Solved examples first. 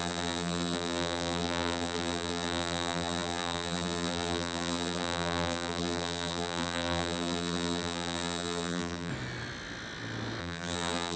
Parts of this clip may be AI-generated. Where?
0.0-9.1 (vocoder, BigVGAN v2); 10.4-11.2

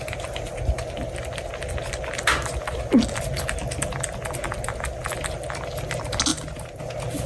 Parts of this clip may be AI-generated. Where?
none

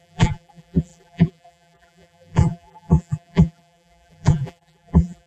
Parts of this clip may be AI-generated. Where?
0.0-5.3 (vocoder, BigVGAN v2)